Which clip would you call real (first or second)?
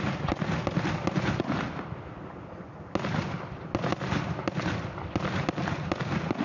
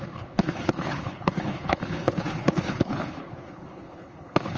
first